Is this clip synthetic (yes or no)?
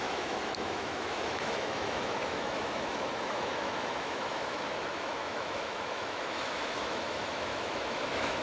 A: yes